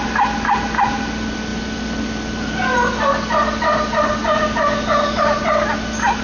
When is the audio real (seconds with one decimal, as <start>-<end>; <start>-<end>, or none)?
0.0-6.2